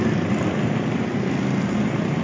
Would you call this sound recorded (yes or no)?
yes